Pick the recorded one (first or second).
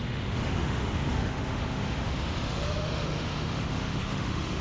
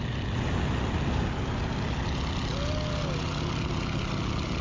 second